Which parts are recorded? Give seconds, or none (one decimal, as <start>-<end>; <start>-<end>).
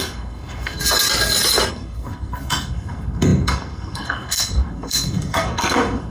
0.8-1.7